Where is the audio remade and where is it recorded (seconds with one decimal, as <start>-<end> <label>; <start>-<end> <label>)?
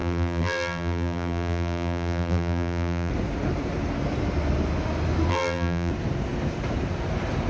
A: 0.0-3.1 remade; 3.1-5.3 recorded; 5.3-5.9 remade; 5.9-7.5 recorded